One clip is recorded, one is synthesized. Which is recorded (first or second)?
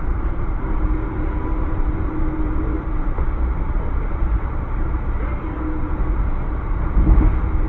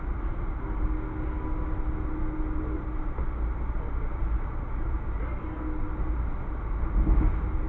second